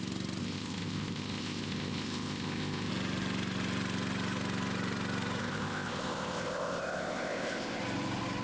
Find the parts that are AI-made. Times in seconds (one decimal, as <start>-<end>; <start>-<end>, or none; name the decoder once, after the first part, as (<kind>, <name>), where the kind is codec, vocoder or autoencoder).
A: 0.4-2.9 (codec, ZipCodec); 5.4-7.8